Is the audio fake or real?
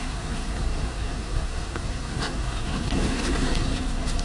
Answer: fake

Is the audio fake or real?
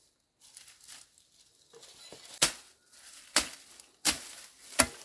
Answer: real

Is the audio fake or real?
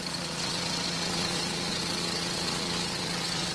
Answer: fake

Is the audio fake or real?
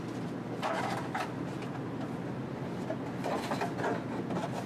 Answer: real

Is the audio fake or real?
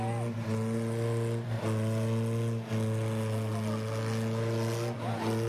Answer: real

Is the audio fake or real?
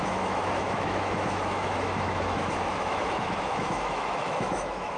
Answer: fake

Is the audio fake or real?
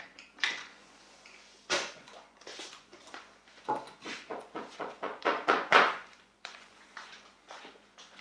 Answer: fake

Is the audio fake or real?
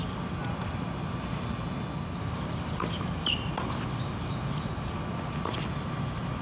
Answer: real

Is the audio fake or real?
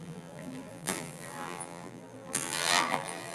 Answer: fake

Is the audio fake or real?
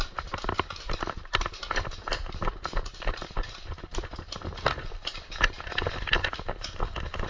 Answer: real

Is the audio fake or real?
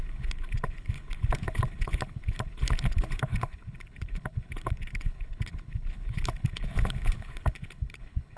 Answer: fake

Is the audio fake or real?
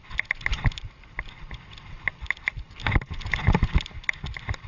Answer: real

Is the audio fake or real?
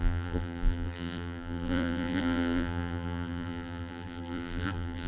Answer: fake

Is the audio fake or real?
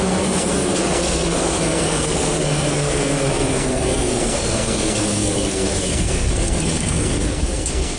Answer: fake